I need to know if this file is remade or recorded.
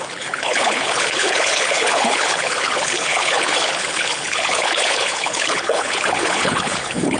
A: remade